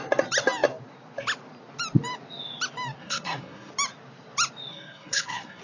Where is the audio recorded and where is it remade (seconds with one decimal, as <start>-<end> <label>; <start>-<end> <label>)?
0.0-3.0 recorded; 3.0-3.7 remade; 3.7-4.7 recorded; 4.7-5.6 remade